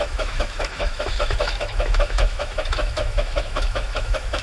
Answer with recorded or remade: remade